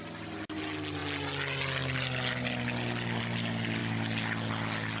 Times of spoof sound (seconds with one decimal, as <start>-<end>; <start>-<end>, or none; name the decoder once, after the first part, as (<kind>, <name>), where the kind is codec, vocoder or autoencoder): none